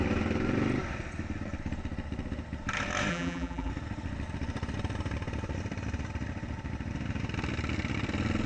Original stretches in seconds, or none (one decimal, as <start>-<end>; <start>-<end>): 0.0-3.1; 3.7-8.5